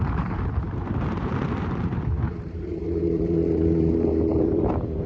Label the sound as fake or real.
fake